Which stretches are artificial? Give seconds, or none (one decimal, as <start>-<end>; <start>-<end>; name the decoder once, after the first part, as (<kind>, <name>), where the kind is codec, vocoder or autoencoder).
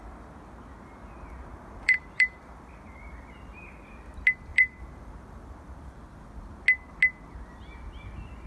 1.5-3.9 (vocoder, BigVGAN v2); 4.5-5.8